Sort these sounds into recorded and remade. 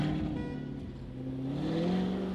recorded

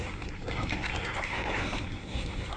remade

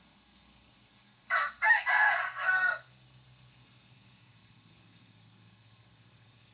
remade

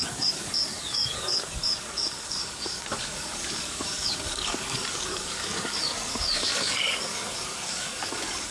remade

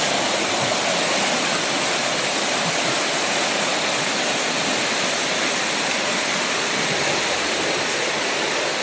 recorded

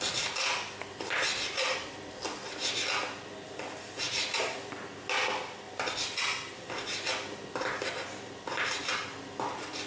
recorded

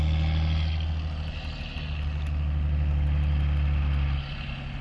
recorded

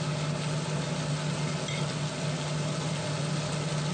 recorded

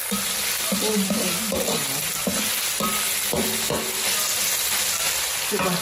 recorded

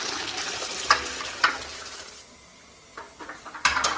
recorded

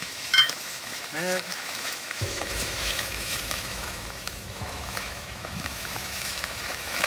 remade